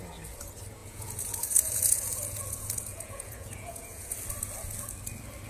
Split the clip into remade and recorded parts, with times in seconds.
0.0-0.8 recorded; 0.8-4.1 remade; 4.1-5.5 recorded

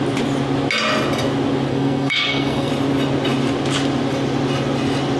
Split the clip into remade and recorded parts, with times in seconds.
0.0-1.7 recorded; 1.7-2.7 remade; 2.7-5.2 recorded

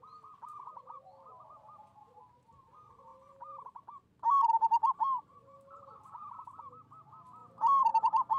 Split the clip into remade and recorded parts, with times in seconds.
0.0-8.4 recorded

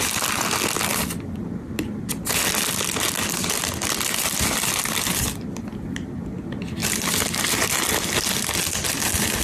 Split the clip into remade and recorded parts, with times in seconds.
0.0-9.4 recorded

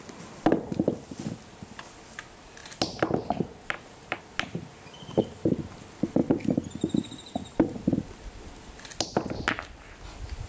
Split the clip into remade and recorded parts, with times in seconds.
0.0-10.5 recorded

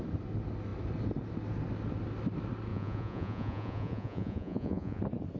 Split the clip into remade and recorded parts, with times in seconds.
0.0-2.7 recorded; 2.7-5.0 remade; 5.0-5.4 recorded